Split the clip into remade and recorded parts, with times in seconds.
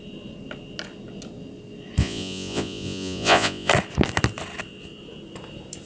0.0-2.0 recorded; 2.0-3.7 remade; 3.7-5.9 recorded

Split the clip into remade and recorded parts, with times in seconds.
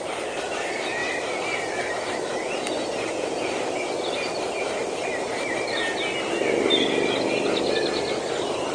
0.0-8.7 recorded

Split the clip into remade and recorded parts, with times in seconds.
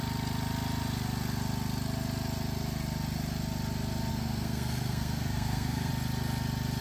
0.0-4.1 recorded; 4.1-5.9 remade; 5.9-6.8 recorded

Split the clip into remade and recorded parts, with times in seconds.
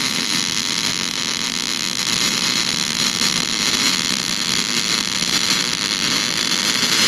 0.0-0.9 remade; 0.9-2.0 recorded; 2.0-7.1 remade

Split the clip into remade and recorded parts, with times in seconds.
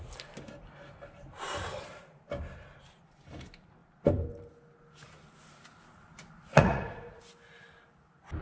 0.0-6.5 recorded; 6.5-7.2 remade; 7.2-8.4 recorded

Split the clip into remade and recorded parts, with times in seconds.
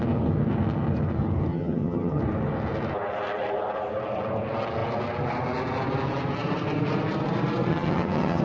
0.0-1.5 recorded; 1.5-2.2 remade; 2.2-7.7 recorded; 7.7-8.4 remade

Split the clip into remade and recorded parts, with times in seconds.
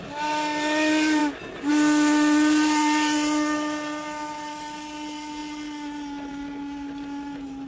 0.0-7.7 recorded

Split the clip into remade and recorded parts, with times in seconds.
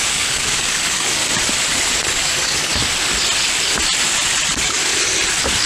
0.0-1.2 remade; 1.2-2.1 recorded; 2.1-2.7 remade; 2.7-4.5 recorded; 4.5-4.9 remade; 4.9-5.7 recorded